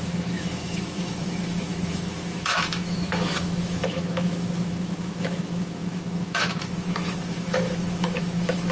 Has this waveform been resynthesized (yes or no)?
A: yes